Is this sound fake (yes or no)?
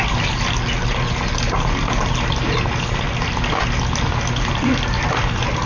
no